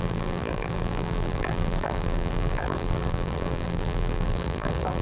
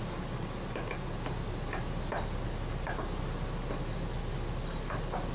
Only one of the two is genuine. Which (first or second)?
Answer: second